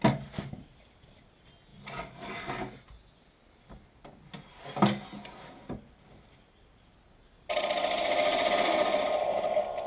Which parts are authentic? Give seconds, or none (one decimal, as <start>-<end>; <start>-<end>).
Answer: 0.0-9.9